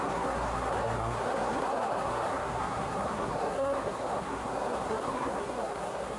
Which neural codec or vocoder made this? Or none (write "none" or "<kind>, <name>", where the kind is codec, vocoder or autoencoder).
codec, SNAC